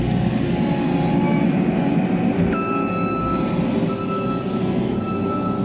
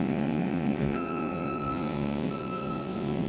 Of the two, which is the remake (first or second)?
second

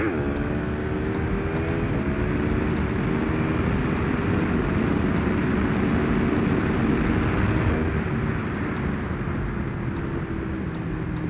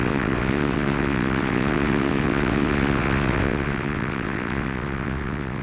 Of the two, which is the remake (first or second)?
second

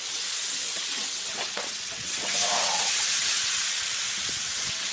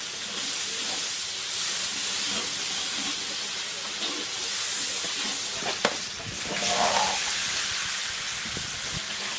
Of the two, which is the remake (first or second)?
first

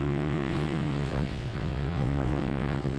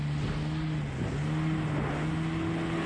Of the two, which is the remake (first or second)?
first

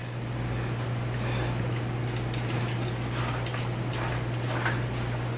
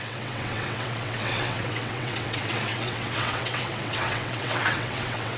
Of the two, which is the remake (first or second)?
second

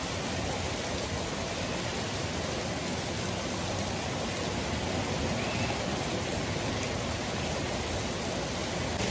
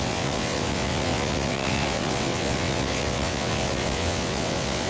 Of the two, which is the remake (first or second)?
second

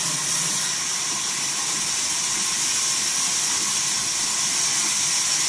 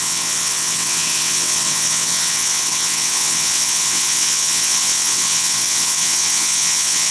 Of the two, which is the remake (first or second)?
second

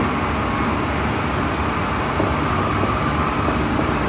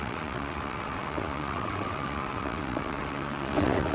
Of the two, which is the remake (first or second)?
second